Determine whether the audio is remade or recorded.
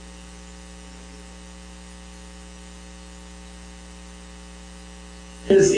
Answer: recorded